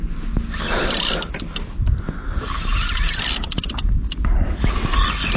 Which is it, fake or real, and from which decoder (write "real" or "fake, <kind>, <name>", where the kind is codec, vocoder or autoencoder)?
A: real